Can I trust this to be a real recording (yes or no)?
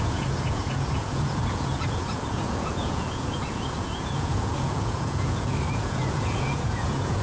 no